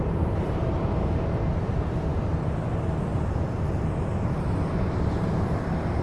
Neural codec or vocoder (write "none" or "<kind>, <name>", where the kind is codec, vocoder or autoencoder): none